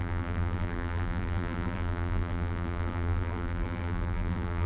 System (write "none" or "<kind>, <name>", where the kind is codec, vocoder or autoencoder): vocoder, BigVGAN v2